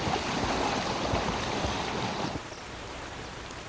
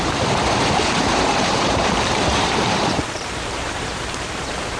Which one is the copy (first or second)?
second